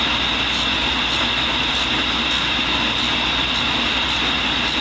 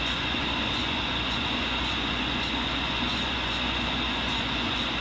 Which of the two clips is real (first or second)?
first